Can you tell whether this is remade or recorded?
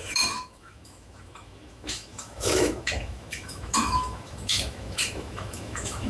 remade